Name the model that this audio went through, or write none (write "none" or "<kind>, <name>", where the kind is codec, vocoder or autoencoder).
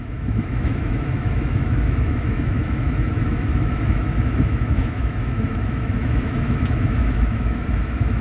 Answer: autoencoder, DAC-VAE